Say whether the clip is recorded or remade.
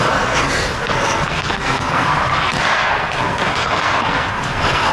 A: remade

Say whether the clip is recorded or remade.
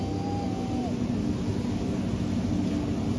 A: recorded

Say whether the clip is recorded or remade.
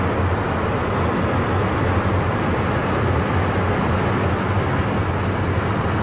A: recorded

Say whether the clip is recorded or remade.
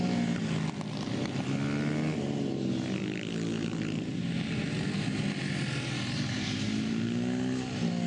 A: recorded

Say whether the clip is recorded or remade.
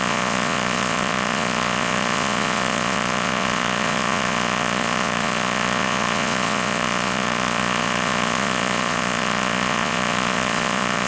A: remade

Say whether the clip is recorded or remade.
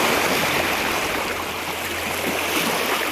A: recorded